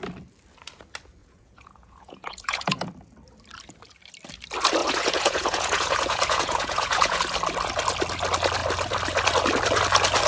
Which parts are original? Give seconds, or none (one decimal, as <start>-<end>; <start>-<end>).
0.0-1.2; 2.9-4.8; 7.2-10.3